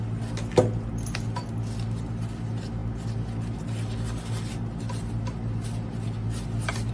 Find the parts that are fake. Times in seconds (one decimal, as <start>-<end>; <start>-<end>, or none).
none